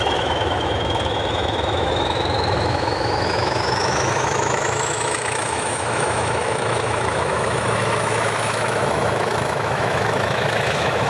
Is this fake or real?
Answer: fake